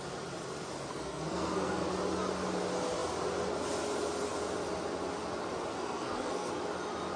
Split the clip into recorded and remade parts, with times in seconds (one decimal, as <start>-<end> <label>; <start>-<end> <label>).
0.0-0.9 recorded; 0.9-1.9 remade; 1.9-5.7 recorded; 5.7-6.5 remade; 6.5-7.2 recorded